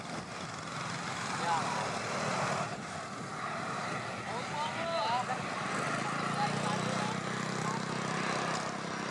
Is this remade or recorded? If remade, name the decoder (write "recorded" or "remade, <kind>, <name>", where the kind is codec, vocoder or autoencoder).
recorded